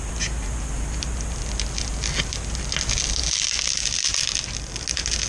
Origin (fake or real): real